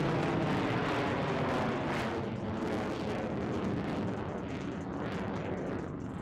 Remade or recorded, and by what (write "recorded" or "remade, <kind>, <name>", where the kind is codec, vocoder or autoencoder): recorded